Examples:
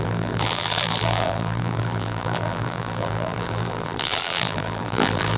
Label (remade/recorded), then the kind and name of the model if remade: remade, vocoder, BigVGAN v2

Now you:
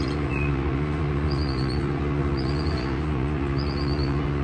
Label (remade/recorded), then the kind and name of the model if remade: remade, vocoder, Vocos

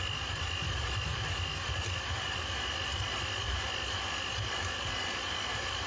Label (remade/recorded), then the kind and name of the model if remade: recorded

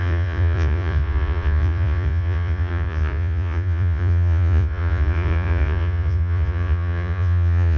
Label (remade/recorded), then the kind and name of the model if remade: remade, vocoder, Vocos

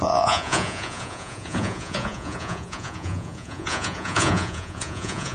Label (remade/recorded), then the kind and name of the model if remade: remade, vocoder, Vocos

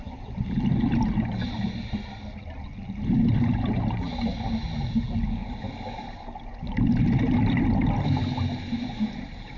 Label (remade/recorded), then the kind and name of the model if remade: recorded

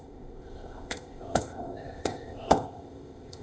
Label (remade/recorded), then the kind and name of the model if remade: remade, codec, ZipCodec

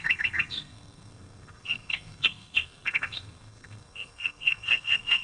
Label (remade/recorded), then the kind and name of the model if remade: remade, codec, SNAC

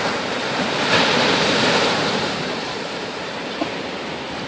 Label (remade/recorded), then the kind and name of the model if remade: remade, vocoder, BigVGAN v2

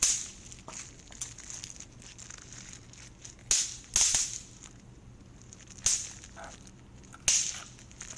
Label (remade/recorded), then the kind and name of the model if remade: recorded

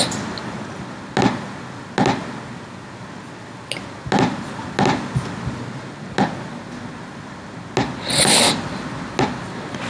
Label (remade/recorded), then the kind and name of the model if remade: recorded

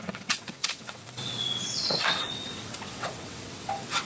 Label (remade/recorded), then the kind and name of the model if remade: remade, vocoder, WaveNeXt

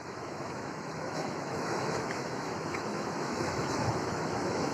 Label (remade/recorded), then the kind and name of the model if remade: remade, autoencoder, DAC-VAE